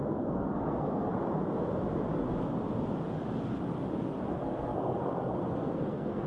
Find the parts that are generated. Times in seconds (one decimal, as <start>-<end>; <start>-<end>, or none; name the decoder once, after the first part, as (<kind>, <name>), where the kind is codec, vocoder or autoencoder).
0.0-1.1 (codec, SNAC); 4.3-6.3